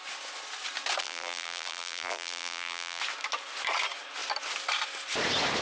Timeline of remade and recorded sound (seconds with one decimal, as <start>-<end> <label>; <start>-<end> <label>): 0.0-1.0 recorded; 1.0-3.0 remade; 3.0-5.6 recorded